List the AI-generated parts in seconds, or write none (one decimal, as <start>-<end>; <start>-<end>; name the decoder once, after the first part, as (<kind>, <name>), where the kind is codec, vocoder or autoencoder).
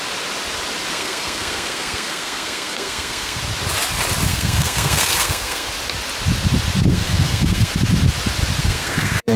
0.9-3.4 (codec, SNAC); 4.3-5.7; 6.9-7.7; 8.6-9.4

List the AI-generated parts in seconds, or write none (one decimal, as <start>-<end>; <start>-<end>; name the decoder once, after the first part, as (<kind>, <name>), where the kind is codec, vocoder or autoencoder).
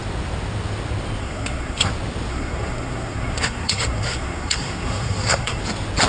1.2-1.9 (codec, SNAC); 2.3-5.6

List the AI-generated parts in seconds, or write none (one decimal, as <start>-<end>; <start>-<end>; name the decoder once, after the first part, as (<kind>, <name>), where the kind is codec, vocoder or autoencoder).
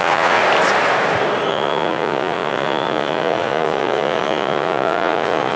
0.0-0.4 (vocoder, Vocos); 1.5-5.6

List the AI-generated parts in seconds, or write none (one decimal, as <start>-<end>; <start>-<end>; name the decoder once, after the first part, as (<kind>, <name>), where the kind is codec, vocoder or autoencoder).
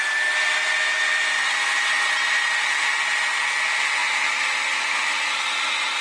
none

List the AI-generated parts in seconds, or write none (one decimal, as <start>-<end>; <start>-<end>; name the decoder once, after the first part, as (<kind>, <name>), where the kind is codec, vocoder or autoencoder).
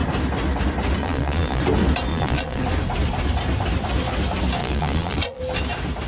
1.0-1.6 (vocoder, Vocos); 2.1-2.6; 4.6-5.4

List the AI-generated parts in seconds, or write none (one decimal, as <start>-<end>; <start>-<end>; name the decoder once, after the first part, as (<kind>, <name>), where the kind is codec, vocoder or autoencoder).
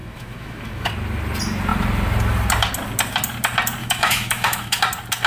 0.0-0.9 (autoencoder, DAC-VAE); 3.8-4.8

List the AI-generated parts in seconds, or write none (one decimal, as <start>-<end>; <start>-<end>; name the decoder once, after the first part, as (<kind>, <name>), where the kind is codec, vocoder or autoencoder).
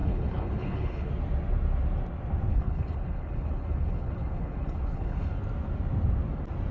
0.0-1.1 (codec, HILCodec); 2.5-5.4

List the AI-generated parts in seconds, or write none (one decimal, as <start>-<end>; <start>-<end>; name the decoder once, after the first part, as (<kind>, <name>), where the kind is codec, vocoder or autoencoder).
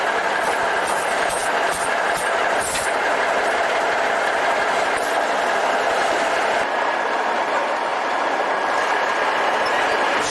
none